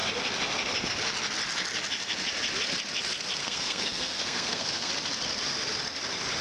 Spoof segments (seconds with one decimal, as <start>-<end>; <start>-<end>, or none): 3.4-4.9